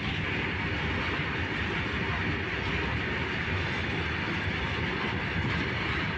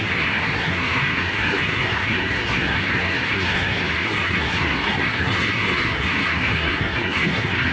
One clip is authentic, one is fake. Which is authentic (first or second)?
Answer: first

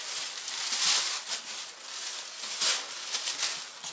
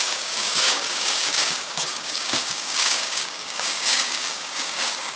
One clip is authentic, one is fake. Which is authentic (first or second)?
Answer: first